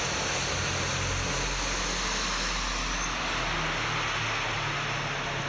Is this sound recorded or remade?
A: recorded